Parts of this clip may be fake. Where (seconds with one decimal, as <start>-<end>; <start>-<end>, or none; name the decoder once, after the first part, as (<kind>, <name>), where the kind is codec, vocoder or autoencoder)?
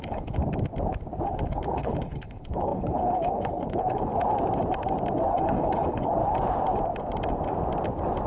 0.0-0.4 (codec, HILCodec); 1.5-4.1; 5.3-6.2